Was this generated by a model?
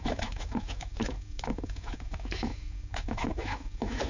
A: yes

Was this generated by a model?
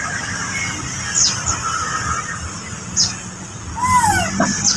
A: no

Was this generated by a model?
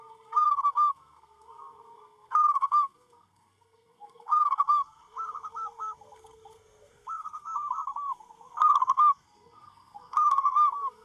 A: yes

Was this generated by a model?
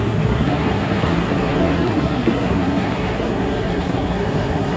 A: yes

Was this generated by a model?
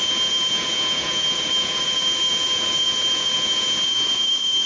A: yes